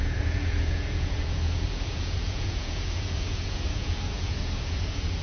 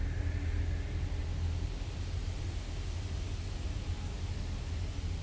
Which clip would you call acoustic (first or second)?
second